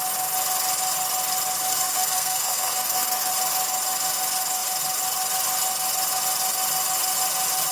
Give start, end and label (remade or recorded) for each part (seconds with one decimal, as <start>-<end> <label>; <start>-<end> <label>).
0.0-1.7 recorded; 1.7-3.3 remade; 3.3-7.7 recorded